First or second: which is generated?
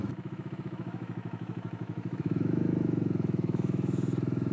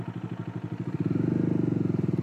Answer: first